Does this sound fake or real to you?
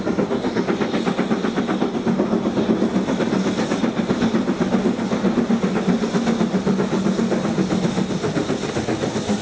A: real